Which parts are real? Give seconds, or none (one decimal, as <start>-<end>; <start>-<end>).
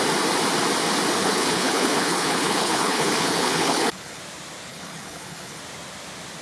0.0-1.2; 4.2-4.7; 5.6-6.4